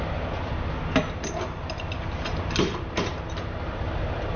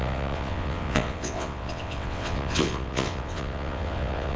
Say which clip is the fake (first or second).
second